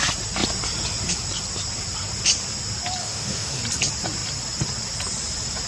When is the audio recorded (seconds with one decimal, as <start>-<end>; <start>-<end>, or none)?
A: 0.0-3.0; 3.6-5.7